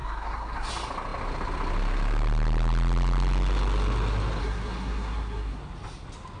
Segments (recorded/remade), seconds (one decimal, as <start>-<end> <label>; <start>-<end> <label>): 0.0-0.7 remade; 0.7-4.4 recorded; 4.4-5.6 remade; 5.6-6.4 recorded

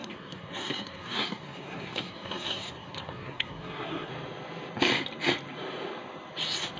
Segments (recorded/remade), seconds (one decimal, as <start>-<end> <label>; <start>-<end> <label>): 0.0-4.1 remade; 4.1-6.8 recorded

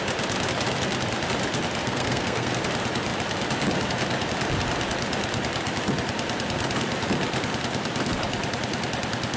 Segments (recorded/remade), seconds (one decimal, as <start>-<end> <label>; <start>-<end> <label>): 0.0-1.8 recorded; 1.8-2.6 remade; 2.6-9.4 recorded